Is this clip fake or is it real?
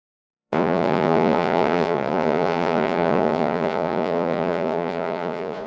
fake